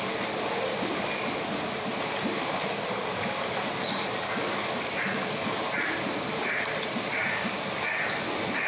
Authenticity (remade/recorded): recorded